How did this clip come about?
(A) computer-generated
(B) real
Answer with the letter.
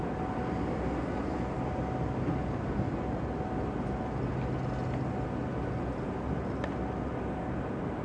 B